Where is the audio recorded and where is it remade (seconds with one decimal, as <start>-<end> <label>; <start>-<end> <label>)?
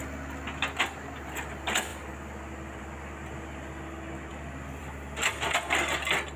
0.0-6.4 recorded